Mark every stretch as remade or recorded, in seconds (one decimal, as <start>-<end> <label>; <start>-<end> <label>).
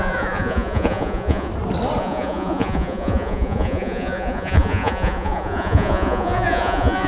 0.0-1.5 remade; 1.5-2.0 recorded; 2.0-7.1 remade